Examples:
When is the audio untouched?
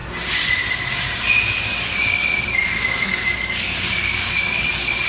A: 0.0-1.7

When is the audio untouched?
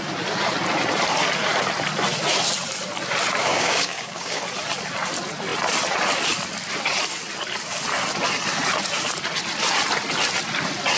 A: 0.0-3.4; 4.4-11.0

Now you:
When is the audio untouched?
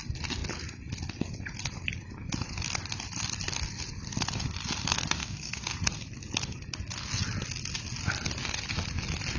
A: 0.0-5.2; 5.7-9.4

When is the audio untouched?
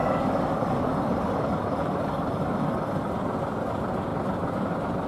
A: 3.1-5.1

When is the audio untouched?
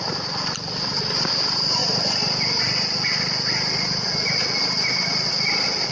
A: 0.0-5.9